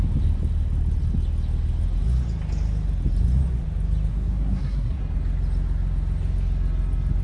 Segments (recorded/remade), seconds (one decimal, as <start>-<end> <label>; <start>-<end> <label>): 0.0-4.1 recorded; 4.1-5.0 remade; 5.0-7.2 recorded

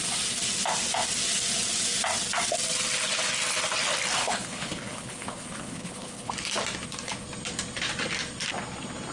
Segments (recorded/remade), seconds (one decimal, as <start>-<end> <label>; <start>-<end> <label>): 0.0-4.1 recorded; 4.1-6.3 remade; 6.3-9.1 recorded

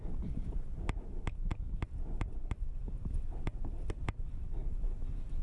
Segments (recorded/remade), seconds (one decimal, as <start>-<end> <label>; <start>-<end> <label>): 0.0-5.4 recorded

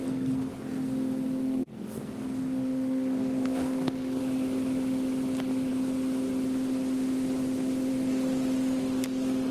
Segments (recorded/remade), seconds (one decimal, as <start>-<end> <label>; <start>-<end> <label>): 0.0-4.2 remade; 4.2-9.5 recorded

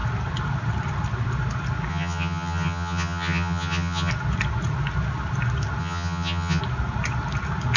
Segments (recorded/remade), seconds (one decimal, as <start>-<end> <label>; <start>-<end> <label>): 0.0-1.9 recorded; 1.9-4.1 remade; 4.1-5.8 recorded; 5.8-6.6 remade; 6.6-7.8 recorded

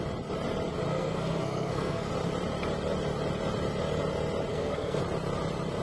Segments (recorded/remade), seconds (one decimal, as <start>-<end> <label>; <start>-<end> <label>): 0.0-0.9 recorded; 0.9-2.1 remade; 2.1-4.5 recorded; 4.5-5.0 remade; 5.0-5.8 recorded

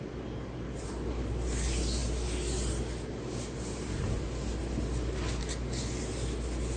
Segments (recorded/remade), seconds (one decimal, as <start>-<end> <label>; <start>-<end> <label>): 0.0-6.8 recorded